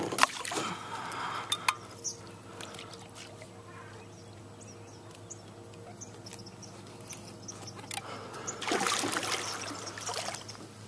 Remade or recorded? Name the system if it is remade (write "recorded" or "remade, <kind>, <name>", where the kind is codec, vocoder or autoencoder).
recorded